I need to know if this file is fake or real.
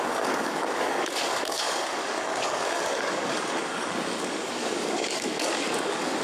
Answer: fake